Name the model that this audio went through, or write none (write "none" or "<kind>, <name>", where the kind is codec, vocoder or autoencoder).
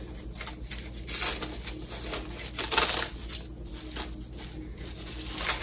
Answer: none